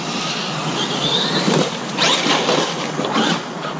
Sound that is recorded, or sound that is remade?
recorded